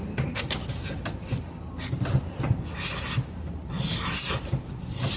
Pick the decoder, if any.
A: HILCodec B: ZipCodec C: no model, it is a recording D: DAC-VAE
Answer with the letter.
C